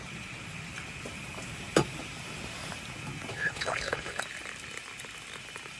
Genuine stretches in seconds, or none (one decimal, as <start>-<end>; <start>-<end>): 0.0-3.3; 4.2-5.8